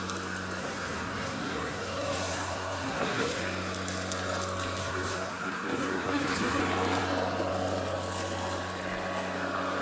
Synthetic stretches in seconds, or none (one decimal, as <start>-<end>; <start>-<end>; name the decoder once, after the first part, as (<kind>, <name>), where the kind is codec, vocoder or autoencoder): 0.6-3.4 (codec, SNAC); 4.8-6.6